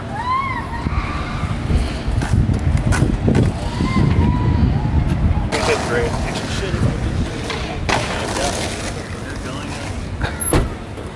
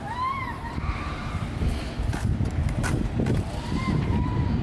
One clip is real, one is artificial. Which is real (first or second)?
first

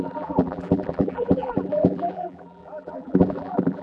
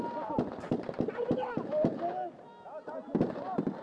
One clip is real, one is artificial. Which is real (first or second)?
second